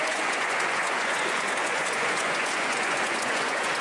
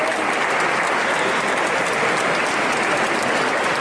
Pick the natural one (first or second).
second